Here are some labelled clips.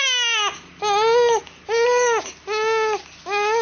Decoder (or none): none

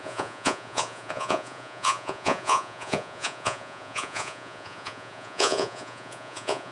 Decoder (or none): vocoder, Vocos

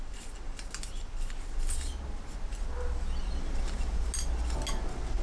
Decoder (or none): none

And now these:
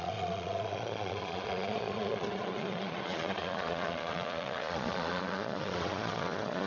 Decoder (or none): vocoder, Vocos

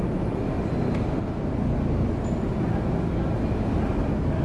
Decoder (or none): none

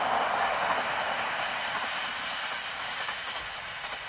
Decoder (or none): none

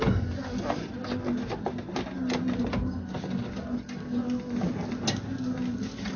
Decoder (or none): none